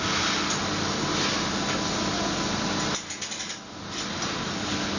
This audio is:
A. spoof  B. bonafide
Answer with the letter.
B